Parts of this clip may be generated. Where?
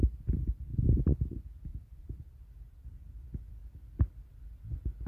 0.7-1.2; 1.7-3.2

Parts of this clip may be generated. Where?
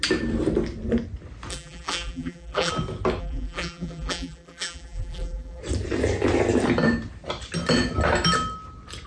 1.5-2.7; 3.2-5.6